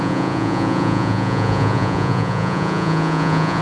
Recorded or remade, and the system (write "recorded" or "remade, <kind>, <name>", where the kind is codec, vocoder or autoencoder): remade, vocoder, Vocos